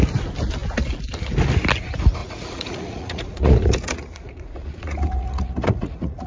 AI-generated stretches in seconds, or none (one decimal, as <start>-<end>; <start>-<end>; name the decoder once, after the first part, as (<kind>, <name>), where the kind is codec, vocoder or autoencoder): 2.2-6.3 (vocoder, Vocos)